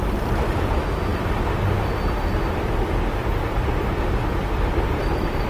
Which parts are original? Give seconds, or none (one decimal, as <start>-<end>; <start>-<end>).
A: 0.0-5.5